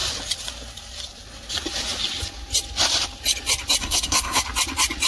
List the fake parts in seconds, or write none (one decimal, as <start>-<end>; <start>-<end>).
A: 3.8-4.4